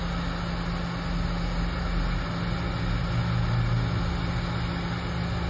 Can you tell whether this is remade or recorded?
recorded